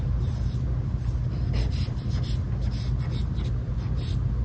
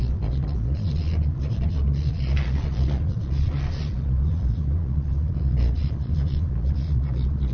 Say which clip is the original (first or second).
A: first